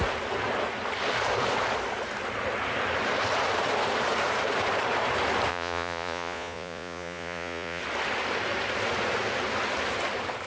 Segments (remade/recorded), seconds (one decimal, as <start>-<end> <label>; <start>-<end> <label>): 0.0-5.5 recorded; 5.5-7.8 remade; 7.8-10.5 recorded